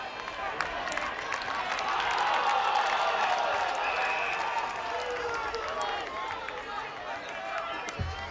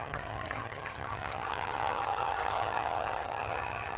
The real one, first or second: first